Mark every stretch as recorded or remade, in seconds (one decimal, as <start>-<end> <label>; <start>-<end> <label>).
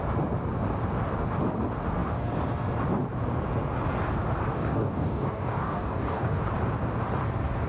0.0-4.5 recorded; 4.5-6.4 remade; 6.4-7.7 recorded